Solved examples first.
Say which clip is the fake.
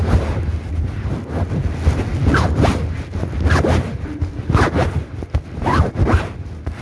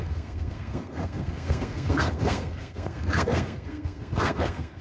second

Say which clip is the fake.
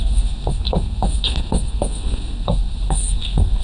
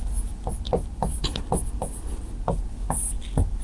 first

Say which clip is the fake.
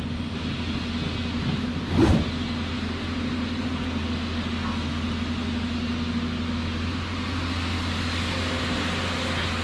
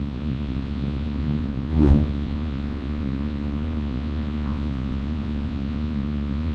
second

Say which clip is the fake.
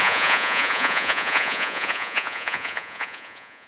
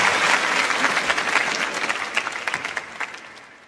first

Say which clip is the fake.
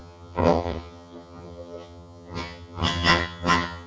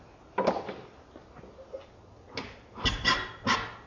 first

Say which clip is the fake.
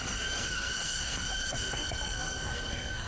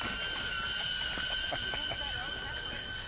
first